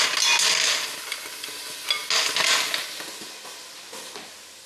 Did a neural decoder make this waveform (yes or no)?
no